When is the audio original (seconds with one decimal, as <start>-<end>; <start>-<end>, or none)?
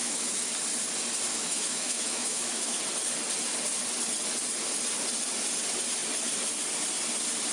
0.5-1.3; 2.8-7.5